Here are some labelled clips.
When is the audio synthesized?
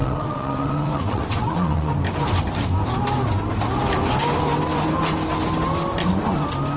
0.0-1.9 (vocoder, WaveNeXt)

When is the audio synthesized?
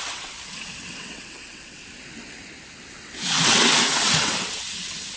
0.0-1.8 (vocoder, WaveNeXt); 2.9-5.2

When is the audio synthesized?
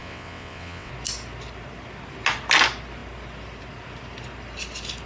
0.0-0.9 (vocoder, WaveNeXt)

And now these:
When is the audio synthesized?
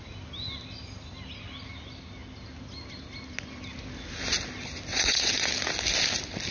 4.9-5.5 (vocoder, WaveNeXt)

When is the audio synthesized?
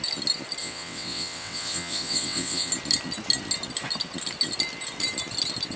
0.6-2.7 (vocoder, WaveNeXt)